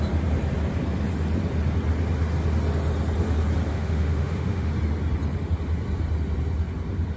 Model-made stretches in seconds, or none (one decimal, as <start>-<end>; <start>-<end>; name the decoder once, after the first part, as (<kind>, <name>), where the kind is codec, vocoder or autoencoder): 3.7-4.7 (autoencoder, DAC-VAE)